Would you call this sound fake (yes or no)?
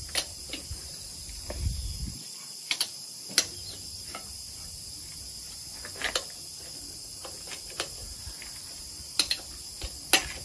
no